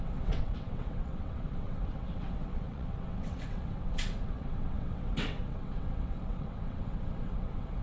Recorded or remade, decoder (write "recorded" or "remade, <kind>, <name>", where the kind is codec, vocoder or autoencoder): remade, vocoder, WaveNeXt